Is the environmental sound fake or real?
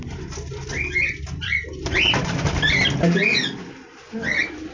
real